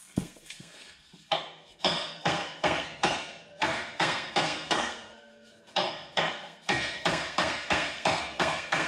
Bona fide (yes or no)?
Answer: no